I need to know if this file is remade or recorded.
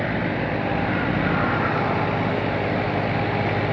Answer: recorded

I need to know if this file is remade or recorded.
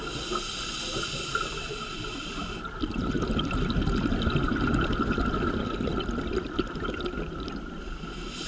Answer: recorded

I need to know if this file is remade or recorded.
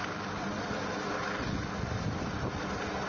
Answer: recorded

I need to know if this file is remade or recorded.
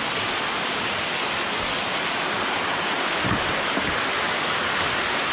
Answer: recorded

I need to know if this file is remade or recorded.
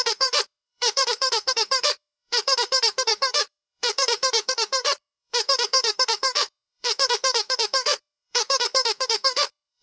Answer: remade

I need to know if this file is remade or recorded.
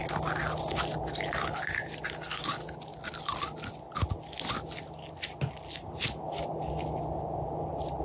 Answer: recorded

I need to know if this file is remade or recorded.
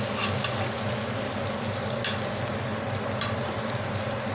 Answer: recorded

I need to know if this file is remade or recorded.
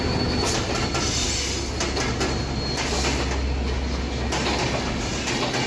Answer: recorded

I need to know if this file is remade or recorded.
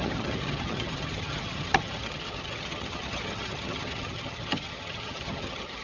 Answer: remade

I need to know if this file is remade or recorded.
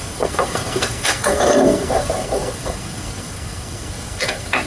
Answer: remade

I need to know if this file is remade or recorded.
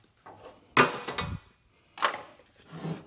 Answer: recorded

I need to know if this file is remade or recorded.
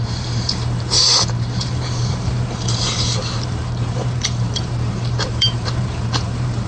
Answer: remade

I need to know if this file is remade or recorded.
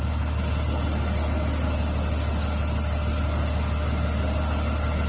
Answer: recorded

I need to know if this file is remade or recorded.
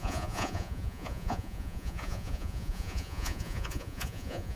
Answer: remade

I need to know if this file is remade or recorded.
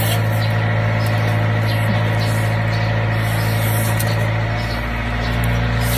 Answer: recorded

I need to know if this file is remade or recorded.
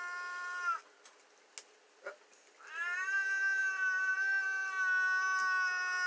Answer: recorded